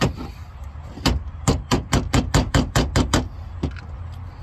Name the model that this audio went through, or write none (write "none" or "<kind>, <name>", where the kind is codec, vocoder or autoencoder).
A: none